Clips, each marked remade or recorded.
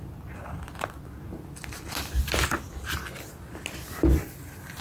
recorded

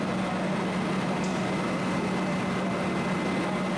recorded